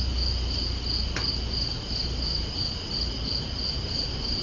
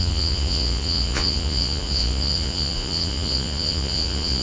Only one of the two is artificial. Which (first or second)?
second